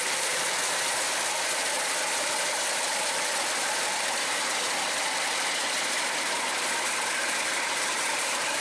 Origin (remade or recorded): remade